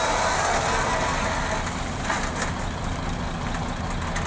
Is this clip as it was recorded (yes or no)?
yes